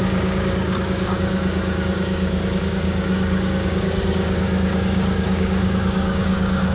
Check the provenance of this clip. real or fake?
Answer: fake